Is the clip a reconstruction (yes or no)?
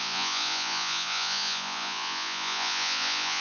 yes